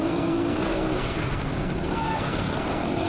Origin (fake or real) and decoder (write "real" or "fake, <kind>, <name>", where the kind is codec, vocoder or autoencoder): fake, codec, SNAC